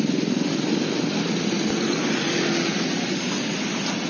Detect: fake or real real